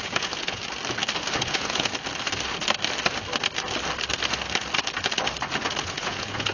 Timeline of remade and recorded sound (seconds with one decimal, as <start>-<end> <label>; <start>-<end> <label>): 0.0-0.6 remade; 0.6-1.4 recorded; 1.4-1.9 remade; 1.9-5.8 recorded; 5.8-6.5 remade